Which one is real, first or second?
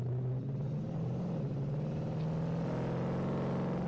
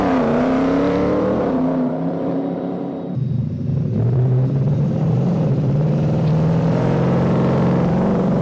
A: first